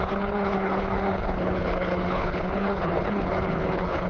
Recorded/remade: remade